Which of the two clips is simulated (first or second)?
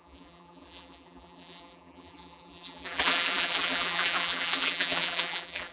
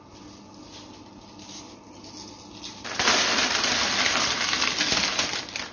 first